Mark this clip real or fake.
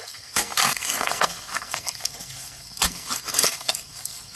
fake